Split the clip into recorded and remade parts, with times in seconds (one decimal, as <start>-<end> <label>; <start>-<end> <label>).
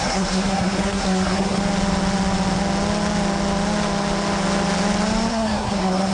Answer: 0.0-1.6 remade; 1.6-5.3 recorded; 5.3-6.1 remade